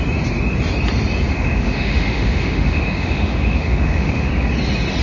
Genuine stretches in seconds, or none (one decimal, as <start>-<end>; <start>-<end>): 0.0-1.3; 4.3-5.0